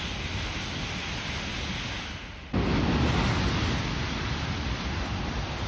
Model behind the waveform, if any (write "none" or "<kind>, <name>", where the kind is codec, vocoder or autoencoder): none